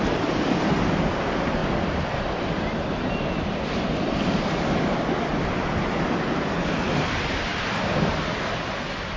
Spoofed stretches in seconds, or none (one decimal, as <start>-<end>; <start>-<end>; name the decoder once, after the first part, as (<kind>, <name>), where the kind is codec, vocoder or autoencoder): none